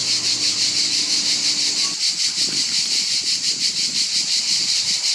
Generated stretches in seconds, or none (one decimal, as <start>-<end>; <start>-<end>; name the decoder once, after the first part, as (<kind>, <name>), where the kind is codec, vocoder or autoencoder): 3.1-5.1 (vocoder, BigVGAN v2)